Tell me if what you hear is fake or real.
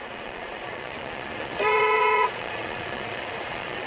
fake